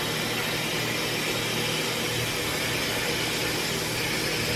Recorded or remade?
recorded